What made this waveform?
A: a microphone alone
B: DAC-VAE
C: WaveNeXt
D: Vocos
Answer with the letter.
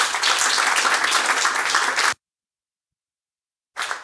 A